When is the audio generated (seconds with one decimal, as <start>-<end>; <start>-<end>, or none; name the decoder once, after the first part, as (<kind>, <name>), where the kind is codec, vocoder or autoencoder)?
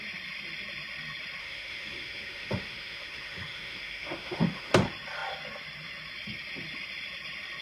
1.4-4.7 (autoencoder, DAC-VAE)